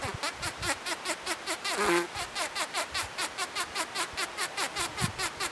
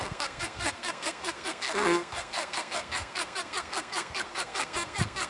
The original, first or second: first